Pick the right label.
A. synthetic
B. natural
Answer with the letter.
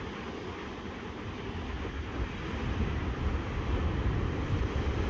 B